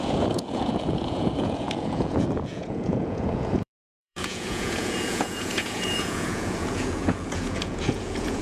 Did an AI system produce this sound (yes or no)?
yes